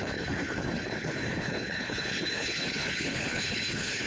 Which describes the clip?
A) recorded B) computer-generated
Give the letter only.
B